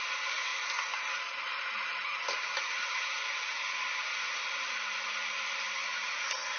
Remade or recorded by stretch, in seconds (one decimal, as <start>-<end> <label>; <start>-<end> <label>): 0.0-6.6 recorded